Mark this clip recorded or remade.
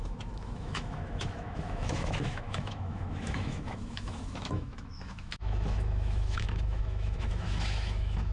remade